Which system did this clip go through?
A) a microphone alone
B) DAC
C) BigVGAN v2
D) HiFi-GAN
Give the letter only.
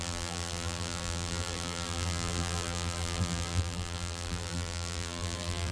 C